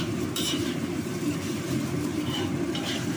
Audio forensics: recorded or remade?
remade